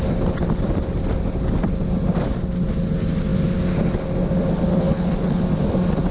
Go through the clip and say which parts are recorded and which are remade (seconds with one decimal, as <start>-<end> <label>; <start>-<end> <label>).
0.0-4.7 recorded; 4.7-5.4 remade; 5.4-6.1 recorded